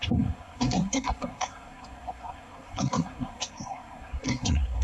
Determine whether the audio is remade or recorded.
remade